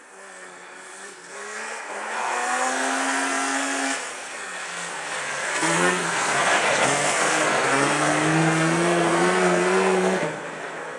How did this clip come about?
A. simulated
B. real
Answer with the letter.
A